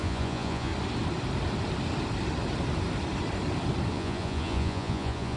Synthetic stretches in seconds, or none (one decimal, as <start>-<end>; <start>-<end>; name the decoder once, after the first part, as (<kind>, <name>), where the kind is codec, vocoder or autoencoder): 0.0-0.7 (vocoder, Vocos); 3.9-5.4